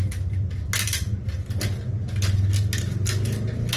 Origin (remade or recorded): recorded